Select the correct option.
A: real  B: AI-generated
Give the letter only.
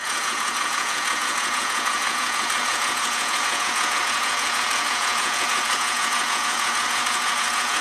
B